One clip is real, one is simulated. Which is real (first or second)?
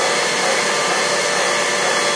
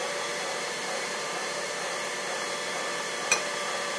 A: first